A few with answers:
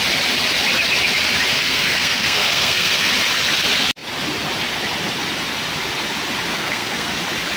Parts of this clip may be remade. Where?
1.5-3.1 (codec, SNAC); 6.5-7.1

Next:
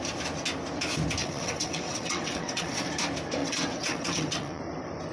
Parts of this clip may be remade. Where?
1.2-2.9 (vocoder, WaveNeXt); 3.4-4.6

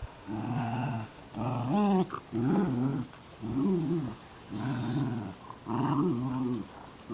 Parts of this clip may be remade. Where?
0.0-1.2 (autoencoder, DAC-VAE)

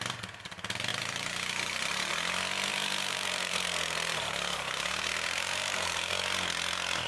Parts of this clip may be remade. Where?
0.9-2.1 (vocoder, BigVGAN v2); 2.7-6.1